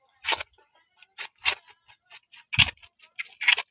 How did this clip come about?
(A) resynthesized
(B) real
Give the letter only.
B